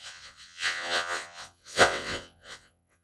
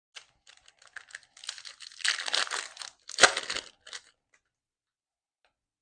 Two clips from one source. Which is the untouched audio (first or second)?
second